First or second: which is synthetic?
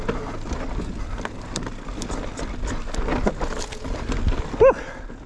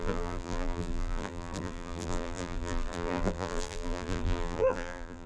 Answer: second